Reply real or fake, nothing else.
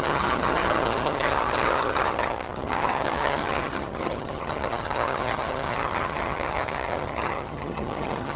fake